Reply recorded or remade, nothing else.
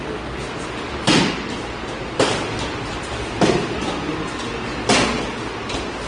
recorded